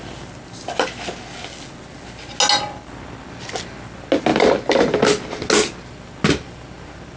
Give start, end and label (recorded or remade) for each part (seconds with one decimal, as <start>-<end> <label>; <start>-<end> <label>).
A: 0.0-4.3 recorded; 4.3-5.0 remade; 5.0-7.2 recorded

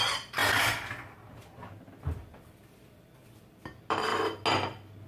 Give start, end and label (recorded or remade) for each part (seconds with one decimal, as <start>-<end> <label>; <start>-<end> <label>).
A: 0.0-0.4 remade; 0.4-2.2 recorded; 2.2-4.1 remade; 4.1-5.1 recorded

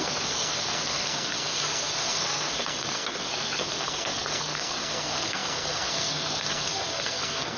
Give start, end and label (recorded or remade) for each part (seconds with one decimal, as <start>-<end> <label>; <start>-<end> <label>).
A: 0.0-7.6 remade

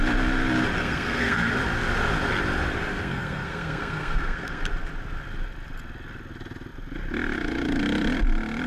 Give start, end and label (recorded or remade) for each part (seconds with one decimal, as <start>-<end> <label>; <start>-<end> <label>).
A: 0.0-0.8 recorded; 0.8-1.5 remade; 1.5-3.0 recorded; 3.0-4.6 remade; 4.6-8.7 recorded

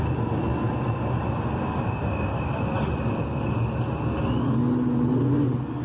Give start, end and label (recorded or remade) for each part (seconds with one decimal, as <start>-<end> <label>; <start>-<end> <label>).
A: 0.0-5.8 recorded

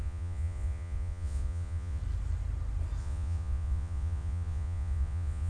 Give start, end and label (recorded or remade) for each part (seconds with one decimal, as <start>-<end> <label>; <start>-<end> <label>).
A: 0.0-2.0 remade; 2.0-3.0 recorded; 3.0-5.5 remade

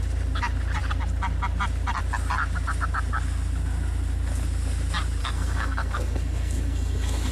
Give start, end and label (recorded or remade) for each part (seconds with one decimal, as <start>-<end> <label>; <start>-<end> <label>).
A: 0.0-5.2 recorded; 5.2-7.3 remade

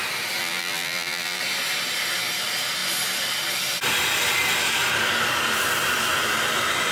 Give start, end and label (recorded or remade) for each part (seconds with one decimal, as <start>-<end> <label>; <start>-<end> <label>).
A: 0.0-0.4 recorded; 0.4-1.4 remade; 1.4-6.9 recorded